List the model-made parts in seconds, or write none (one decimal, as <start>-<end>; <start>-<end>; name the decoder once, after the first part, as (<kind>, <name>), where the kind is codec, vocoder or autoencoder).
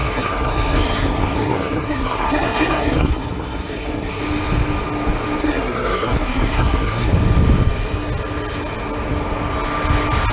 0.0-4.2 (codec, SNAC); 5.4-7.1